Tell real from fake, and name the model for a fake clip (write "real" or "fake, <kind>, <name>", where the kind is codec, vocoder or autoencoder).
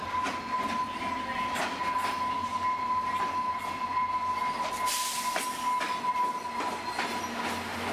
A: real